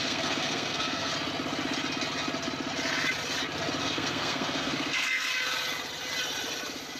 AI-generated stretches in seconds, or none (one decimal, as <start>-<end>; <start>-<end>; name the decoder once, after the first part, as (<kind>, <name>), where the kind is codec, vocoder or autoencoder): 0.0-1.1 (codec, SNAC); 3.8-5.3